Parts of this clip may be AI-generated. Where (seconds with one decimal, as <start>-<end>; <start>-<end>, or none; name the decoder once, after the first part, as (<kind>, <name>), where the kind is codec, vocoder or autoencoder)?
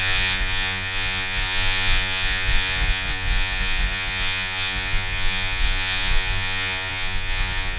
0.0-7.8 (vocoder, Vocos)